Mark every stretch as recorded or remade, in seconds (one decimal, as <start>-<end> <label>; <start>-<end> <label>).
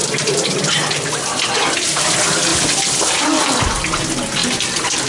0.0-1.4 remade; 1.4-2.5 recorded; 2.5-3.6 remade; 3.6-4.4 recorded; 4.4-5.1 remade